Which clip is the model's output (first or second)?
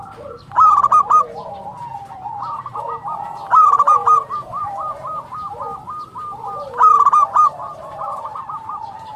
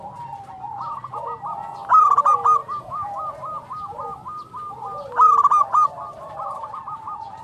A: first